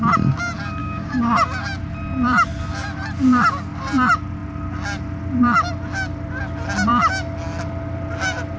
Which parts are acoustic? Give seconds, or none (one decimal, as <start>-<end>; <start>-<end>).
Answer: 0.0-0.8; 1.3-8.6